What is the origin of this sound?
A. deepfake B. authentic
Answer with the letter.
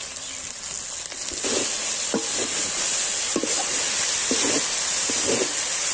B